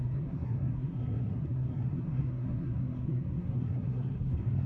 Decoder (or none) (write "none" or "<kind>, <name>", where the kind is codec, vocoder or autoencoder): codec, SNAC